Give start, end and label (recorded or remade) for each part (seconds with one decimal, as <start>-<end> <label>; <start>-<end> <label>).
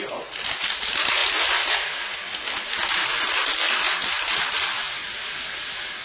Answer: 0.0-6.0 recorded